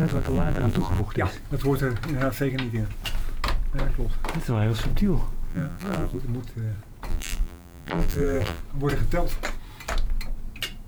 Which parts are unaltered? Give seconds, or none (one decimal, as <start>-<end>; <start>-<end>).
1.0-5.5; 6.2-7.1; 8.6-10.9